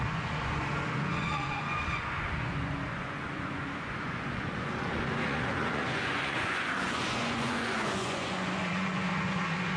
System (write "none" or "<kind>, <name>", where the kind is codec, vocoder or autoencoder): vocoder, Vocos